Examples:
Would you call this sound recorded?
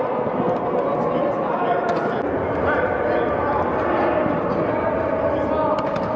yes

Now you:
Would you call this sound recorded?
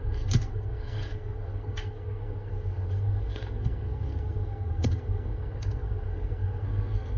no